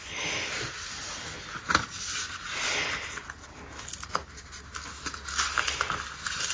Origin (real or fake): real